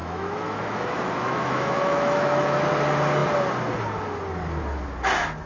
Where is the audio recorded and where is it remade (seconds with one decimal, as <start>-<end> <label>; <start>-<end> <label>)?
0.0-2.7 remade; 2.7-5.5 recorded